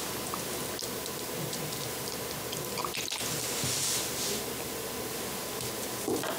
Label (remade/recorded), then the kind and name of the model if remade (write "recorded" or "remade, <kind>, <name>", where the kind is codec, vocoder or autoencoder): recorded